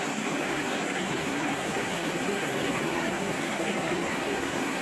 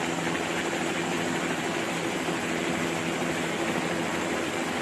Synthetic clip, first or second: first